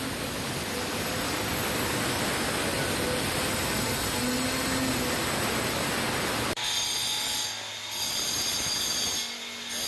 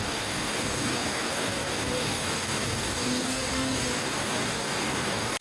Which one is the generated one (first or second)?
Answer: second